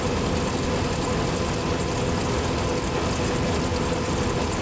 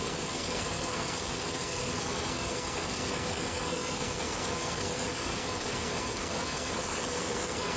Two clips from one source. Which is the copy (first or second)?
second